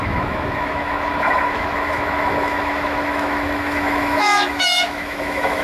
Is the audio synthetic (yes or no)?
yes